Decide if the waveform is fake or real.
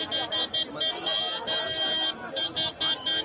real